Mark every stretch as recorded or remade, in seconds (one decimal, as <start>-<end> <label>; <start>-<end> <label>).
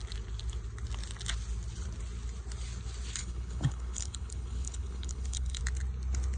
0.0-3.2 recorded; 3.2-5.6 remade; 5.6-6.4 recorded